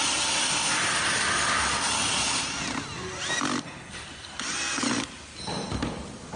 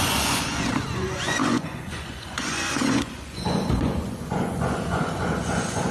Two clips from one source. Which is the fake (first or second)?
second